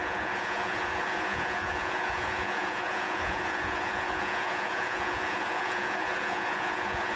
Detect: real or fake fake